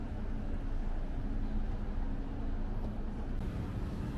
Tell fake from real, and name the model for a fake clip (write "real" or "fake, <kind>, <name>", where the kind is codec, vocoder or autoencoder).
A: real